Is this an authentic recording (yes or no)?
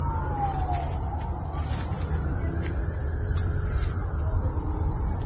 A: yes